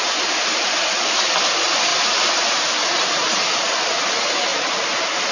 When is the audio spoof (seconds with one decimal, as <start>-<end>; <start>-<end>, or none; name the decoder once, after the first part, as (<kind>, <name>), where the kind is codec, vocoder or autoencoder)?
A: none